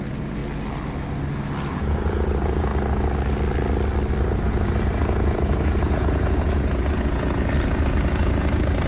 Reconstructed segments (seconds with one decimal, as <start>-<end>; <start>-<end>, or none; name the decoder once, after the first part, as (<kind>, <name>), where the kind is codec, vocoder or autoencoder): 0.0-0.4 (vocoder, Vocos); 1.7-2.7; 4.2-8.9